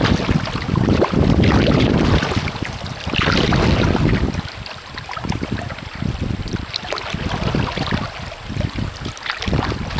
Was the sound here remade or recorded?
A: recorded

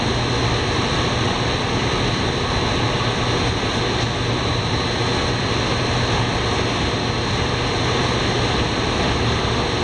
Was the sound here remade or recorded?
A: recorded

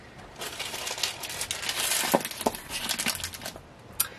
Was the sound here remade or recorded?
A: recorded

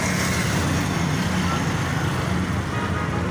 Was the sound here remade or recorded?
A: recorded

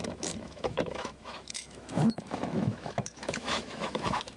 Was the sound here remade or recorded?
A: remade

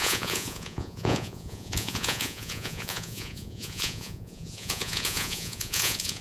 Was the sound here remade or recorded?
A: remade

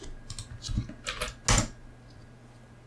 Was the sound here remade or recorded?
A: recorded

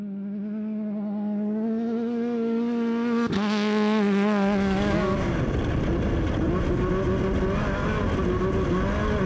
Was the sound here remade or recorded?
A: recorded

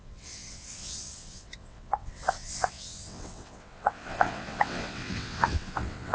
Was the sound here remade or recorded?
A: remade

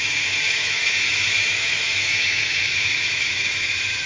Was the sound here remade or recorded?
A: remade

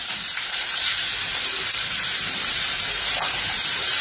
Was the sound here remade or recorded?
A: remade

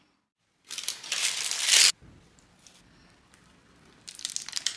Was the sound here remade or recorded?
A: recorded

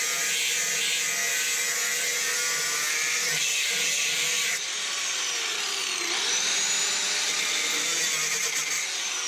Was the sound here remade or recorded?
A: recorded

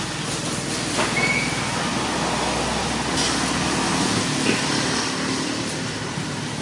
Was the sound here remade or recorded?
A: recorded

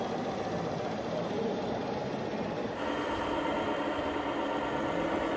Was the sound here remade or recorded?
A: remade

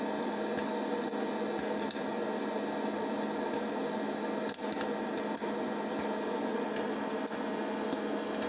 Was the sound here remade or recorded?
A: recorded